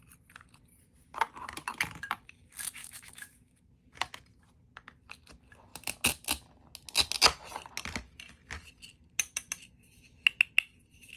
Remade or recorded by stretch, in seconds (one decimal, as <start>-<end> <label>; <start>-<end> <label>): 0.0-2.8 recorded; 2.8-3.7 remade; 3.7-11.2 recorded